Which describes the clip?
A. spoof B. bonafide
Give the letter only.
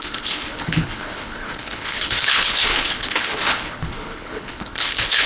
A